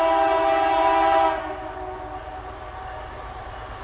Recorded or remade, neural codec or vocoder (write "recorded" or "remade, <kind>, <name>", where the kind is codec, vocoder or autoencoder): recorded